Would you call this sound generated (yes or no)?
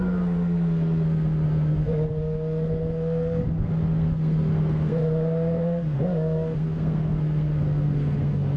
yes